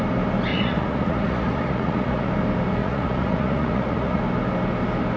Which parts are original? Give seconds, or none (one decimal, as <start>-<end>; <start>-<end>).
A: 0.0-0.5; 2.3-2.8; 4.2-5.2